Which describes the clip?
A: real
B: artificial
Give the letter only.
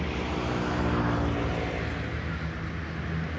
A